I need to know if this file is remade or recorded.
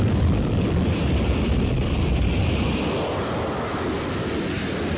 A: recorded